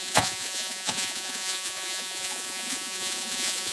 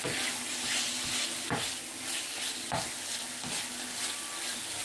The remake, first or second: first